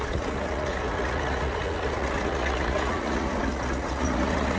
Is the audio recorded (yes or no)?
no